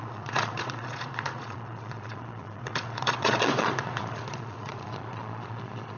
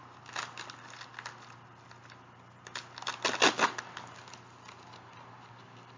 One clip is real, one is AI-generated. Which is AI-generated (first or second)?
first